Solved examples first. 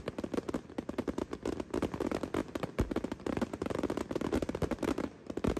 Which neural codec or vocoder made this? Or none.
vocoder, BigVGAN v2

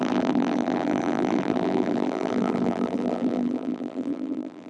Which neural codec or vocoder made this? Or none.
vocoder, BigVGAN v2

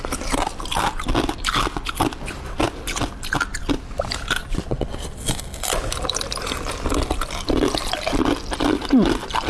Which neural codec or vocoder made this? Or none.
none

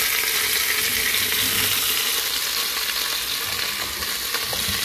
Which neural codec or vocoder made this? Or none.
none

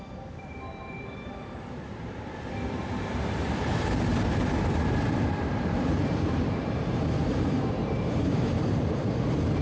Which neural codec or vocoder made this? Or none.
vocoder, BigVGAN v2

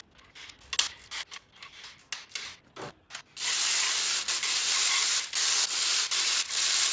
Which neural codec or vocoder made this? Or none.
none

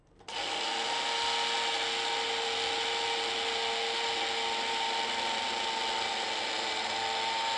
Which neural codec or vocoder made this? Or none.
none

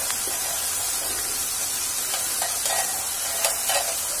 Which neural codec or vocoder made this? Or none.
none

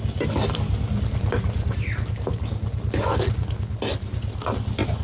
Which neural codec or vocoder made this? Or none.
none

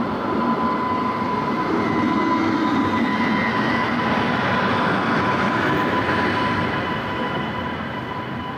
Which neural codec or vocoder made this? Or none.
none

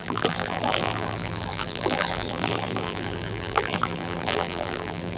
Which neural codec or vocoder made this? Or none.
vocoder, BigVGAN v2